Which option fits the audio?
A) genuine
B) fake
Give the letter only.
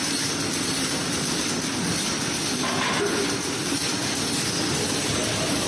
A